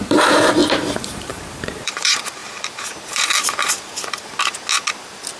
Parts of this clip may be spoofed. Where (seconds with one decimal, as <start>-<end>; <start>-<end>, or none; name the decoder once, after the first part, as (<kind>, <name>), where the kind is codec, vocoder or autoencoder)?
0.0-4.4 (vocoder, BigVGAN v2)